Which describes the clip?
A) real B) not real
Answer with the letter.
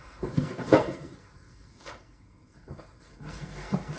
B